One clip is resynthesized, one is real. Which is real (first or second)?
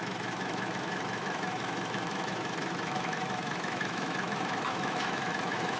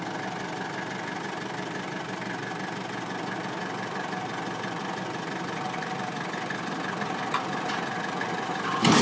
second